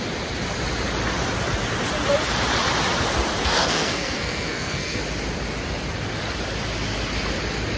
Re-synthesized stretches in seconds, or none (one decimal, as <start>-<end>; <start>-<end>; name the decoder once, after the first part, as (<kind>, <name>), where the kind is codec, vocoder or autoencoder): 3.4-5.0 (codec, SNAC)